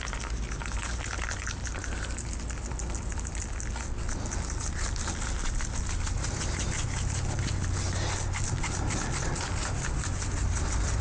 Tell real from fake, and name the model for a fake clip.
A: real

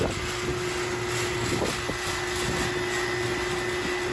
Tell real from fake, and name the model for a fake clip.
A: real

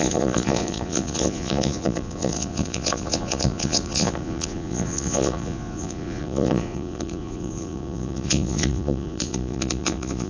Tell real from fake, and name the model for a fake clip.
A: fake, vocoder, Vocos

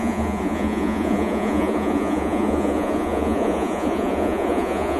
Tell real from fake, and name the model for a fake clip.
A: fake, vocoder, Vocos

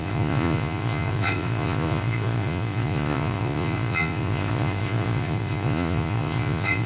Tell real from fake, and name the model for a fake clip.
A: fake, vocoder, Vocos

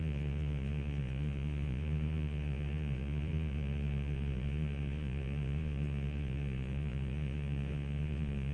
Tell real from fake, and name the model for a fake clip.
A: fake, vocoder, Vocos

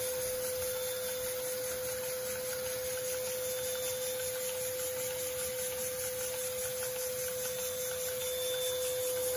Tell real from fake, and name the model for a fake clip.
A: real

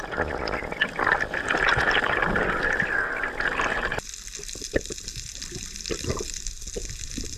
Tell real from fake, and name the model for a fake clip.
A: real